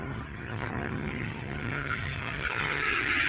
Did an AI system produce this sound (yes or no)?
yes